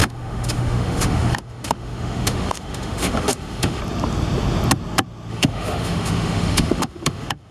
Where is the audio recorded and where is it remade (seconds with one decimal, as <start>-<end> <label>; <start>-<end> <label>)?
0.0-3.8 remade; 3.8-5.3 recorded; 5.3-7.5 remade